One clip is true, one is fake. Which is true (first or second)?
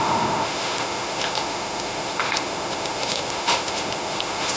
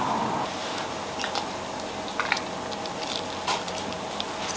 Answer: second